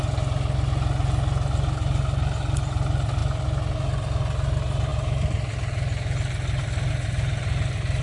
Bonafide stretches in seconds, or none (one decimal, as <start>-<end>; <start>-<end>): 0.0-8.0